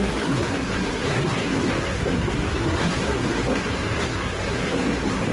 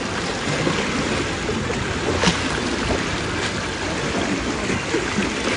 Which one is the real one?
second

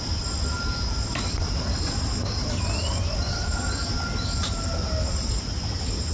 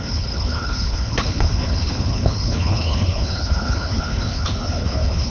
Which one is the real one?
first